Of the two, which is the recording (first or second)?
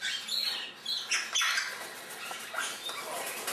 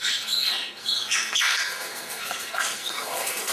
first